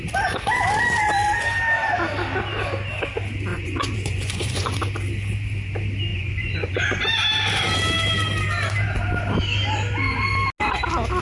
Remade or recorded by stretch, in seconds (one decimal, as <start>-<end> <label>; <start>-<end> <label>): 0.0-3.5 recorded; 3.5-4.8 remade; 4.8-6.1 recorded; 6.1-7.0 remade; 7.0-11.2 recorded